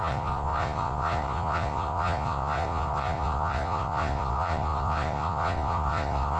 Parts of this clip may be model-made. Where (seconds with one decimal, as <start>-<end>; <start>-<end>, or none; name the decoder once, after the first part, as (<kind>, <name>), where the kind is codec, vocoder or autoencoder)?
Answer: 0.0-6.4 (vocoder, Vocos)